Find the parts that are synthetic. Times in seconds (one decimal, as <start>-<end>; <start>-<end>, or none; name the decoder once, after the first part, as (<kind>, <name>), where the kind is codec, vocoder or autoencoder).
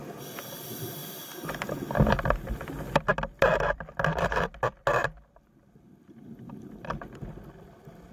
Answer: none